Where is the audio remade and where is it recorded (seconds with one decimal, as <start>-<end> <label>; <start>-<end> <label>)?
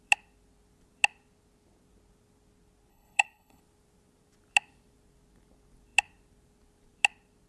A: 0.0-2.9 recorded; 2.9-3.6 remade; 3.6-7.5 recorded